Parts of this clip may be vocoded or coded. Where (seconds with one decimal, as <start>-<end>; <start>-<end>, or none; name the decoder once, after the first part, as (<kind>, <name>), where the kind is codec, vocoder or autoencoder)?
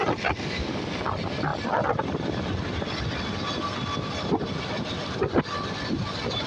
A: none